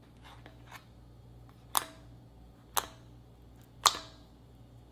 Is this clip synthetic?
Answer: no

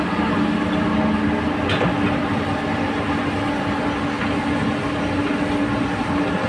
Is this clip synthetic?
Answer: no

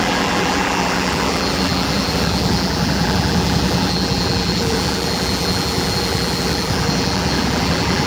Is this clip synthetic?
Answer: yes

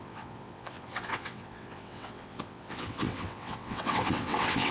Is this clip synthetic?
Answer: yes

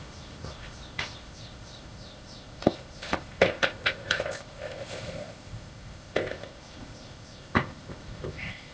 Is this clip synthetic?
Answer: yes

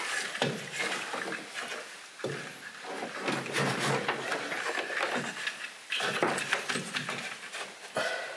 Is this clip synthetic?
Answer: no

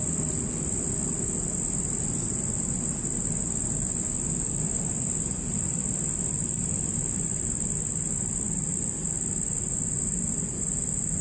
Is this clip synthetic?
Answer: no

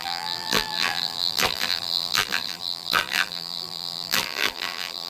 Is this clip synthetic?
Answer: yes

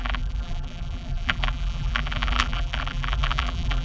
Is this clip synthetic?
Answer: yes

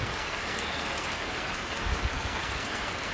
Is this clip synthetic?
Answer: yes